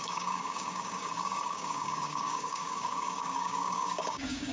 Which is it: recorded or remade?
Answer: remade